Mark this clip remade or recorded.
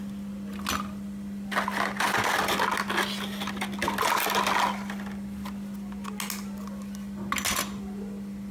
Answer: recorded